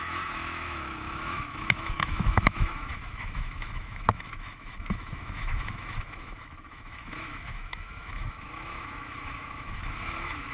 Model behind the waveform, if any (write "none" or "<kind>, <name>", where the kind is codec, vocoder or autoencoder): autoencoder, DAC-VAE